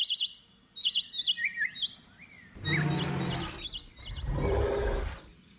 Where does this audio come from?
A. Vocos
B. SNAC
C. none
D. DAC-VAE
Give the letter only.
C